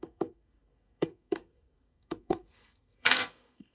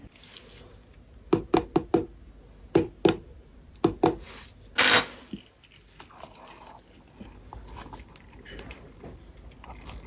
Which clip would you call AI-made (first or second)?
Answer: first